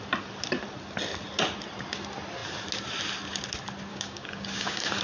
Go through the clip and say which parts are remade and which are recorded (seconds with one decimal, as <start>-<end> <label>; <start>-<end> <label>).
0.0-3.9 recorded; 3.9-5.0 remade